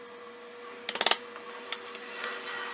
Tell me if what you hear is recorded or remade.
recorded